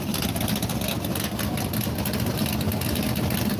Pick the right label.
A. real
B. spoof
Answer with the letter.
A